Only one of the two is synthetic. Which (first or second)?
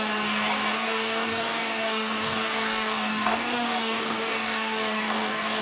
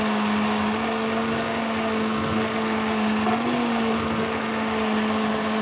first